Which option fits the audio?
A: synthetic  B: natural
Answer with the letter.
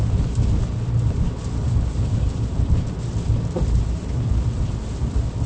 B